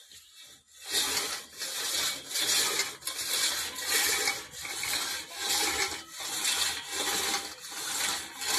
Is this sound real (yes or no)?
yes